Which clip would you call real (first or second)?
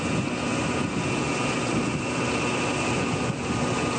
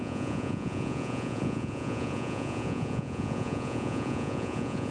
first